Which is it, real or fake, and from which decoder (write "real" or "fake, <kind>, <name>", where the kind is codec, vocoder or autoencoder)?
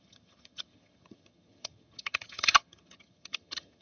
fake, vocoder, HiFi-GAN